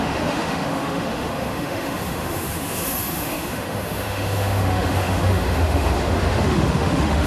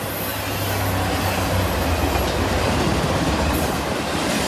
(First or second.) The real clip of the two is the second